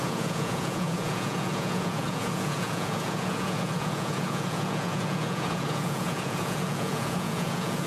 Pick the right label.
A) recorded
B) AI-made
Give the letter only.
B